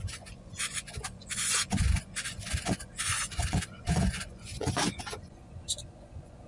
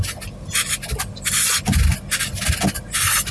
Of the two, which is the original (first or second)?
second